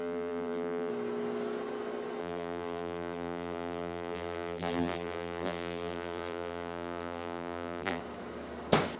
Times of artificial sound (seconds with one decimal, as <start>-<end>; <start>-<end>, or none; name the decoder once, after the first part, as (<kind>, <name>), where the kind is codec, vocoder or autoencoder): 0.0-0.9 (vocoder, BigVGAN v2); 2.2-8.0